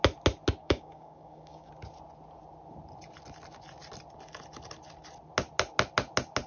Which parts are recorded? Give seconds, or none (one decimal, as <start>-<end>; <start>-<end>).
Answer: 0.0-0.6; 1.7-6.5